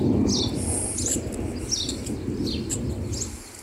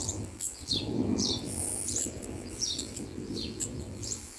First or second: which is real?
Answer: first